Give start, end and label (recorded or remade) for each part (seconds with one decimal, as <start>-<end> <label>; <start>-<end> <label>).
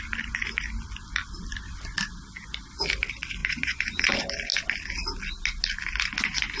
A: 0.0-3.4 recorded; 3.4-4.1 remade; 4.1-6.6 recorded